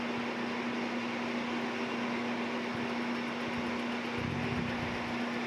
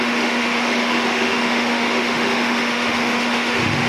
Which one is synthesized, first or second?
second